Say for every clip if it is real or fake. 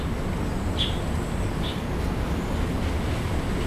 real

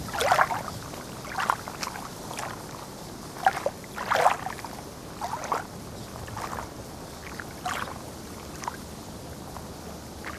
real